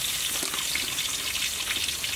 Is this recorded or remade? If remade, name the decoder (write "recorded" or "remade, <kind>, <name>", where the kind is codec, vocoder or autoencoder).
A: recorded